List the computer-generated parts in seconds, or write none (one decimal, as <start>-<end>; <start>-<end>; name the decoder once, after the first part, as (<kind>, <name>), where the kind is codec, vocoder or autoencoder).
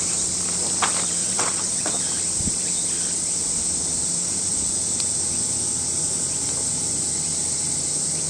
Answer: 1.2-2.0 (vocoder, WaveNeXt)